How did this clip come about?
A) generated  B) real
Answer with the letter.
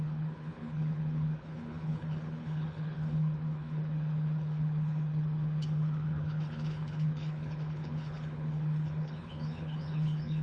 A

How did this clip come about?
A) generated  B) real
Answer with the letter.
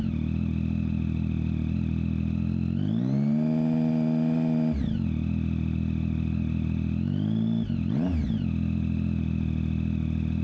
B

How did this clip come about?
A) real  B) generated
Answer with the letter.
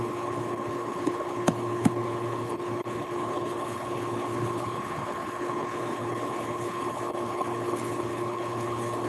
B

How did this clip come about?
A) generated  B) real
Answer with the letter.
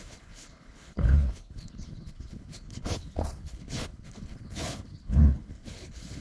A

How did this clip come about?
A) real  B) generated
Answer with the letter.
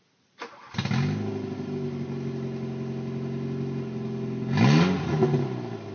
A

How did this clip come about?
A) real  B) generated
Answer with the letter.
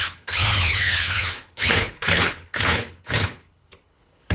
B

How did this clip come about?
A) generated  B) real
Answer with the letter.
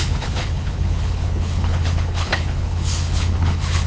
A